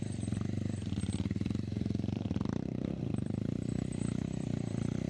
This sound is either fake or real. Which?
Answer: fake